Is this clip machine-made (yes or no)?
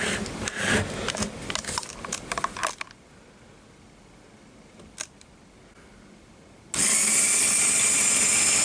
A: no